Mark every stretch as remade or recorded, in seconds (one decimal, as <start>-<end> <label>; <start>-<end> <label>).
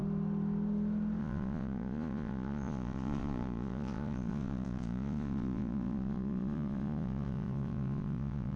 0.0-1.2 recorded; 1.2-8.6 remade